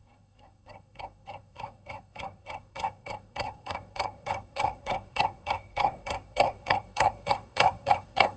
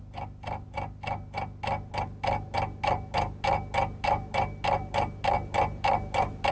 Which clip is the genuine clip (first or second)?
second